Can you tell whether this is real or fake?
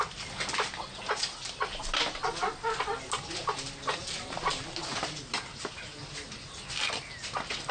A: real